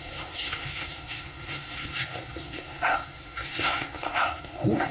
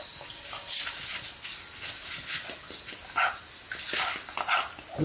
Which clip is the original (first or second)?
second